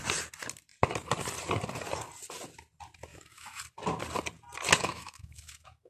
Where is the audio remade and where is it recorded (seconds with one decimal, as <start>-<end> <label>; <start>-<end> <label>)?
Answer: 0.0-3.1 recorded; 3.1-3.6 remade; 3.6-4.8 recorded; 4.8-5.9 remade